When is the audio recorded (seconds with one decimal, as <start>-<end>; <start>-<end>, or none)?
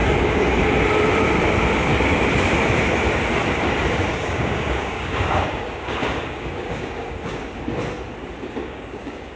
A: 0.6-4.1; 7.6-8.6